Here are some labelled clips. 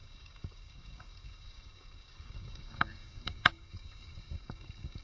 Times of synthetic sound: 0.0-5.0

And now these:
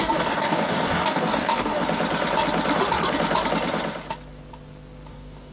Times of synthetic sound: 0.0-1.8; 5.1-5.5